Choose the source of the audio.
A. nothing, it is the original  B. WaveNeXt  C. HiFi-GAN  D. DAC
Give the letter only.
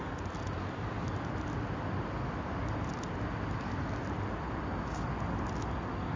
A